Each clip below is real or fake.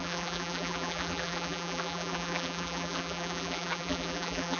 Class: fake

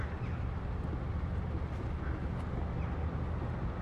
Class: real